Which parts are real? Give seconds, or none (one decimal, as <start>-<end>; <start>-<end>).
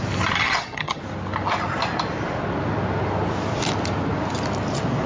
0.0-0.4; 1.0-5.1